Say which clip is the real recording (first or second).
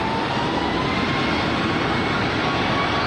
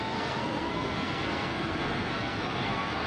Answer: first